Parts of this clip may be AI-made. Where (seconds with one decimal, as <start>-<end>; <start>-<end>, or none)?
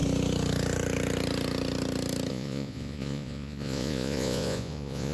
2.3-5.1